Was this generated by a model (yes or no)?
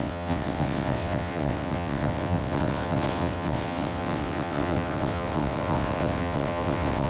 yes